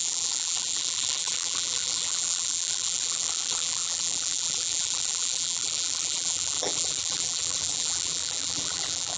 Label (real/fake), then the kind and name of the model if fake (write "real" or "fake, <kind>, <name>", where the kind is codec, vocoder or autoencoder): fake, vocoder, BigVGAN v2